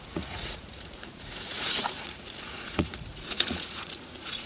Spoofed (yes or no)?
yes